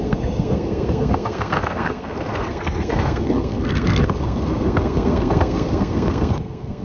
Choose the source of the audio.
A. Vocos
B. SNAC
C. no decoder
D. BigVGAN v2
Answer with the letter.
B